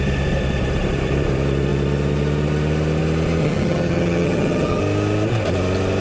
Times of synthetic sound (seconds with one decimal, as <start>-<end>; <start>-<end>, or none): 3.4-4.8